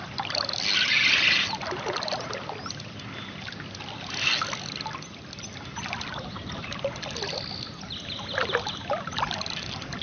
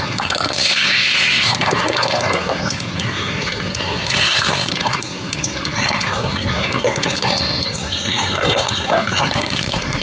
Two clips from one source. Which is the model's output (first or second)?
second